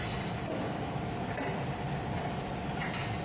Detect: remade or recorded recorded